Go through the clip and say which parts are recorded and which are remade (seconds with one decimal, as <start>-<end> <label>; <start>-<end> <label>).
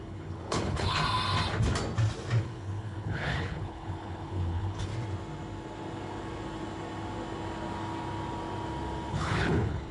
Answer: 0.0-1.0 remade; 1.0-2.4 recorded; 2.4-4.9 remade; 4.9-9.1 recorded; 9.1-9.9 remade